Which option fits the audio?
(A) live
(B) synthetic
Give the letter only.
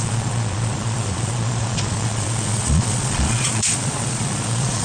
B